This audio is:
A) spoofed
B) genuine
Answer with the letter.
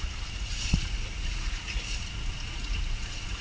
A